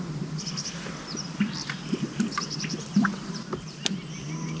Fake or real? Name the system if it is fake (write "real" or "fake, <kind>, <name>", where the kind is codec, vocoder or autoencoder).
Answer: real